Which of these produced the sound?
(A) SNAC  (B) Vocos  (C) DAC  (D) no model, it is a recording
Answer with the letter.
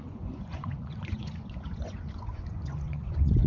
B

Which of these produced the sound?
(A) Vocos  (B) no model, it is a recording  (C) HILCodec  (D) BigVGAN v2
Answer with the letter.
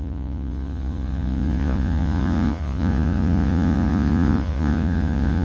A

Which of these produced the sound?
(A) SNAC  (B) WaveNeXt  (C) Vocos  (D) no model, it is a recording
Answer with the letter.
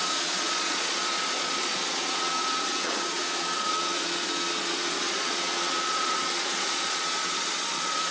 C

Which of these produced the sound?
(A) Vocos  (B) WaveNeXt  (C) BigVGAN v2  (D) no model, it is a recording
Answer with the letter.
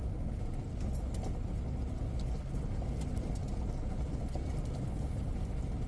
D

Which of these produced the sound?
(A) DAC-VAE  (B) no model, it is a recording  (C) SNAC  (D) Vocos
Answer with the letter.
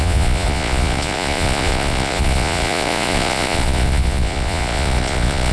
D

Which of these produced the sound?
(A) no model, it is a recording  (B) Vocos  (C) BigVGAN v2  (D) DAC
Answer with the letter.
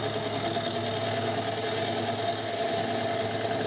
A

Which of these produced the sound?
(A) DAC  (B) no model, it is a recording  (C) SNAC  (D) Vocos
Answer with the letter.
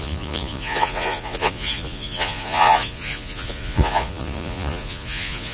D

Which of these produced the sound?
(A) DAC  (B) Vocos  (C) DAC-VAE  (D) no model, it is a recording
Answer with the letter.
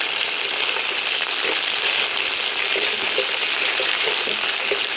D